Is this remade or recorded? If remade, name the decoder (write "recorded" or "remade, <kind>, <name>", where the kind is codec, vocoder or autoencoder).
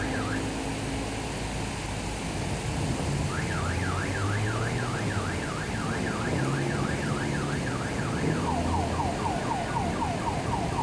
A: recorded